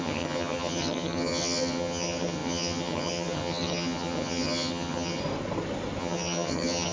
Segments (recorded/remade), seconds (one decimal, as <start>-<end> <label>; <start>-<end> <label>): 0.0-5.2 remade; 5.2-6.0 recorded; 6.0-6.9 remade